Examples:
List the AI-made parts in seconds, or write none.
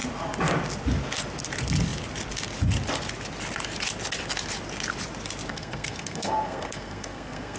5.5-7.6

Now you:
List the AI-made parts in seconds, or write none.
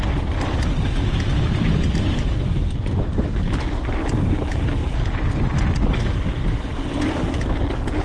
4.8-6.8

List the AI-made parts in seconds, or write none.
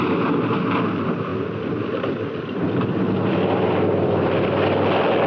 none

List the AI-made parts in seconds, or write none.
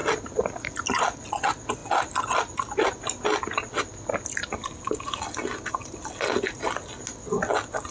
none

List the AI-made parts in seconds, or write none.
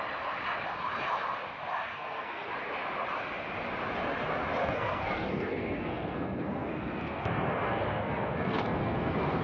1.9-2.5; 4.6-9.4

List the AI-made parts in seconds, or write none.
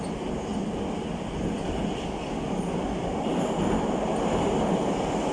none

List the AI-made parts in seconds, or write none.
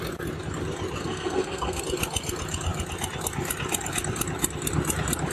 1.0-1.8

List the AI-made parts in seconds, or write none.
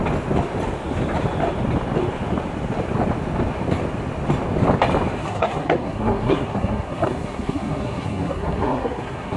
5.2-9.4